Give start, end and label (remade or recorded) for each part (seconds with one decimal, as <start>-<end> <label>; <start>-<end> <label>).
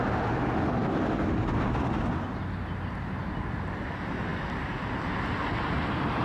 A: 0.0-6.2 recorded